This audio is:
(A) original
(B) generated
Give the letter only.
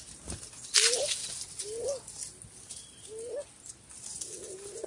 A